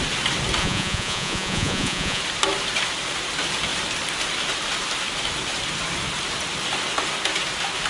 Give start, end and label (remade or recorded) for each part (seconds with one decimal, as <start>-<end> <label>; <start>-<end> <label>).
0.0-0.6 recorded; 0.6-2.2 remade; 2.2-7.9 recorded